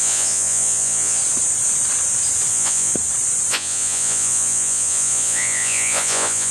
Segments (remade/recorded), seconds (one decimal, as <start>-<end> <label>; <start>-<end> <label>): 0.0-1.2 remade; 1.2-2.5 recorded; 2.5-2.9 remade; 2.9-3.5 recorded; 3.5-6.5 remade